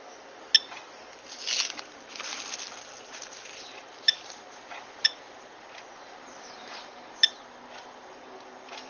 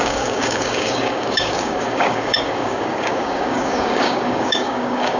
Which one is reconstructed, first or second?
second